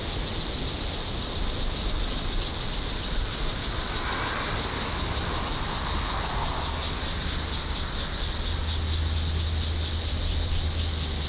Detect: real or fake real